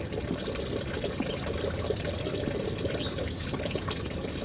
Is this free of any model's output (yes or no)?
yes